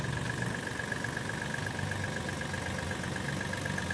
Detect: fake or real real